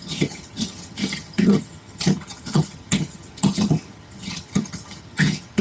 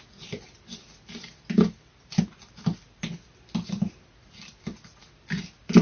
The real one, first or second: second